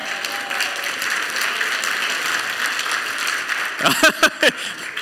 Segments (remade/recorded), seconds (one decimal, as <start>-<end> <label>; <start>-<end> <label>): 0.0-5.0 recorded